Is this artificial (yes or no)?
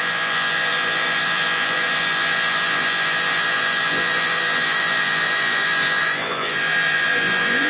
yes